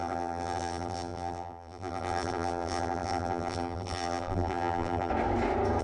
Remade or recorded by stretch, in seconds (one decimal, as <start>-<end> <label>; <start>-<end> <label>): 0.0-5.1 remade; 5.1-5.8 recorded